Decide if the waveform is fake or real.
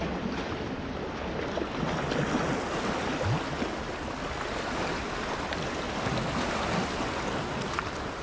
real